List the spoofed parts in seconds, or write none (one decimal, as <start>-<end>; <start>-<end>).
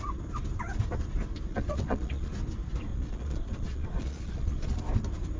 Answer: 1.5-2.3; 2.9-4.8